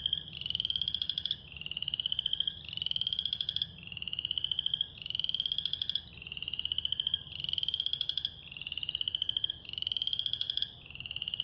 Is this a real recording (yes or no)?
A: yes